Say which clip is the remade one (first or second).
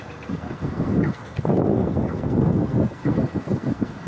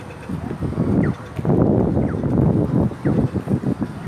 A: first